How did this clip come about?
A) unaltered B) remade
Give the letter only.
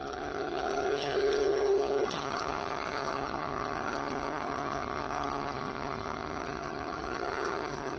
B